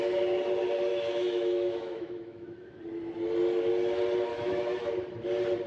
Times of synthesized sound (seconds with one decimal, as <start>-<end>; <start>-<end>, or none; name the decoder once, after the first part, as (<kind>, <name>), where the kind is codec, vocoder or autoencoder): 0.9-2.8 (autoencoder, DAC-VAE); 4.3-4.9